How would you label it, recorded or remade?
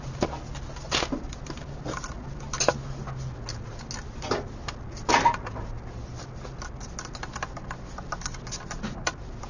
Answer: recorded